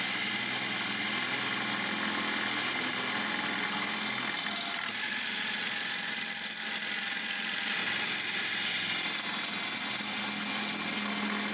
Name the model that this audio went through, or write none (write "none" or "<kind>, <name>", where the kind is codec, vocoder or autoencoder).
none